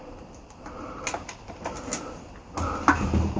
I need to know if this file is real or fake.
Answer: real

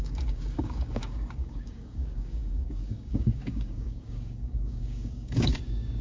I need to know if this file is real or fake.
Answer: fake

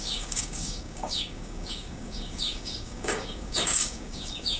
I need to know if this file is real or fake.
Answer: fake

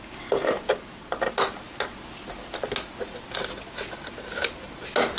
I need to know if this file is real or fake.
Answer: real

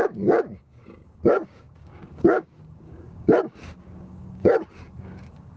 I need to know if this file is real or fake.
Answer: fake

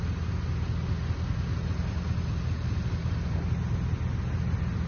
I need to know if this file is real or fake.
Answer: real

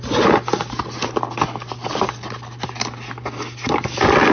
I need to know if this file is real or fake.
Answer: real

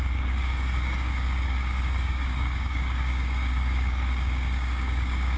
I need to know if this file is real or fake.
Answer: fake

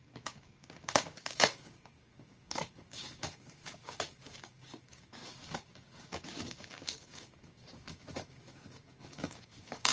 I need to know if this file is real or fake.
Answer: fake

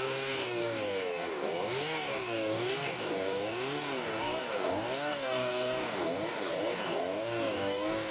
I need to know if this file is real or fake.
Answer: fake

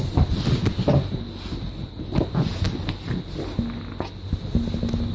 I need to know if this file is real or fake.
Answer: real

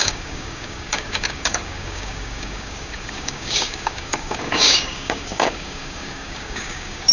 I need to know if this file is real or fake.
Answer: fake